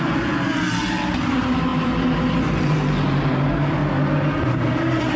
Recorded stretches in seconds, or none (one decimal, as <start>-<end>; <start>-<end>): 3.8-4.4